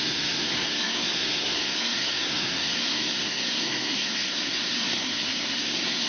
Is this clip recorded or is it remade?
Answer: remade